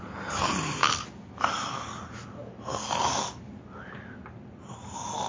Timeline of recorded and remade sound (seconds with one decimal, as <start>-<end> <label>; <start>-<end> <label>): 0.0-5.3 recorded